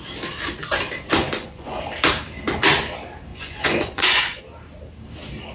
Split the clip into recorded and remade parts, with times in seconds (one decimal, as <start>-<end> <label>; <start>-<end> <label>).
0.0-1.2 recorded; 1.2-1.8 remade; 1.8-3.3 recorded; 3.3-4.4 remade; 4.4-5.5 recorded